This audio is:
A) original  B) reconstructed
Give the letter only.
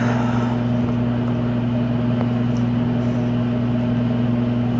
A